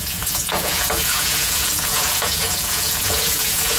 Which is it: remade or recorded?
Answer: remade